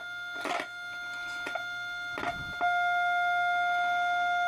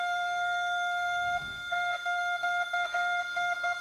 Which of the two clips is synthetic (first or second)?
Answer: second